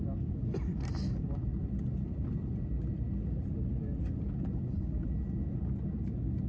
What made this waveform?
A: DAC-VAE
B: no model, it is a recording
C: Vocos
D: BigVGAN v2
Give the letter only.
B